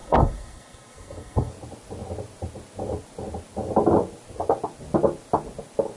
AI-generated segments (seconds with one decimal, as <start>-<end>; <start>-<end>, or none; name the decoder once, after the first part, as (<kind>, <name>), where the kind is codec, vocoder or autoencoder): 0.0-1.5 (codec, SNAC)